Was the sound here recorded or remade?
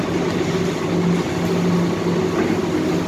recorded